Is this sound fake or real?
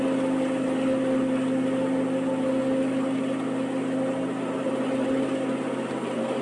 real